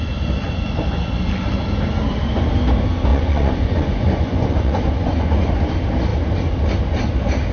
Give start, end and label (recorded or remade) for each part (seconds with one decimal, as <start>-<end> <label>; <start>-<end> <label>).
0.0-3.1 recorded; 3.1-5.5 remade; 5.5-7.5 recorded